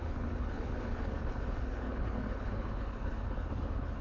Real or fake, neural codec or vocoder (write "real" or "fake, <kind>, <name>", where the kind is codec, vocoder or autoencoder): fake, codec, HILCodec